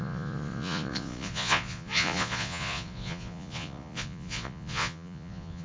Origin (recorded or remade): remade